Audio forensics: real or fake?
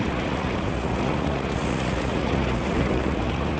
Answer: fake